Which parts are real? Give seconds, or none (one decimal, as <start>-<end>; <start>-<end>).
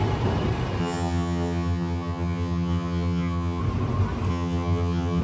0.0-0.8; 3.6-4.3